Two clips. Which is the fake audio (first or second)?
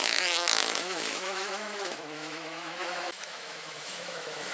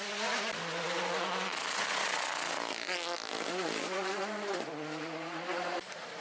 first